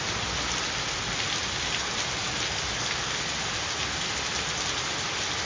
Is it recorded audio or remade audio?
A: recorded